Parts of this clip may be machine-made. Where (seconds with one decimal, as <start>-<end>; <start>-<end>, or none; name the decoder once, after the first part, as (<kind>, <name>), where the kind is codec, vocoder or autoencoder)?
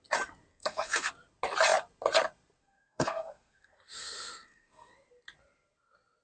0.5-1.1 (codec, SNAC); 2.6-4.9